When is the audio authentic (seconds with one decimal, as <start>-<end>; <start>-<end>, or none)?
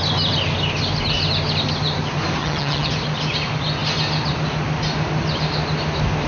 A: 0.0-2.4; 2.9-6.3